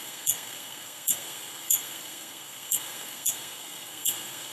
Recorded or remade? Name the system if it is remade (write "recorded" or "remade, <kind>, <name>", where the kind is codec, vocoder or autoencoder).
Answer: remade, codec, SNAC